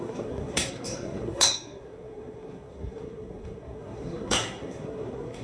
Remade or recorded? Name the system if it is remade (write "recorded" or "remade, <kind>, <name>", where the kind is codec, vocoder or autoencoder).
remade, codec, SNAC